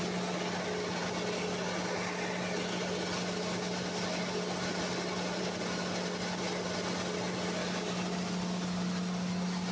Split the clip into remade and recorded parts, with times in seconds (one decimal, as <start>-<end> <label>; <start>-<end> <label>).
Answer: 0.0-9.7 recorded